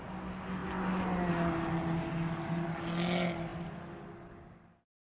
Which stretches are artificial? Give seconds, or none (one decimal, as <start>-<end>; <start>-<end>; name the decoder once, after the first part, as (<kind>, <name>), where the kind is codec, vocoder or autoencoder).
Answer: none